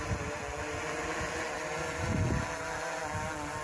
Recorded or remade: recorded